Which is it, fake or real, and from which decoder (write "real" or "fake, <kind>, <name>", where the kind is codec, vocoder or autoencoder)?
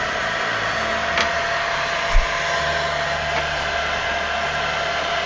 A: real